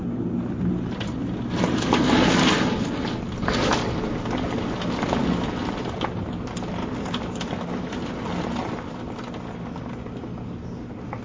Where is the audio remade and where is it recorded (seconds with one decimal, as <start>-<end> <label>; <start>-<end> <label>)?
0.0-11.2 recorded